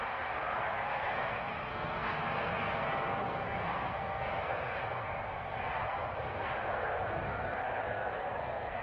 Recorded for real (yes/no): no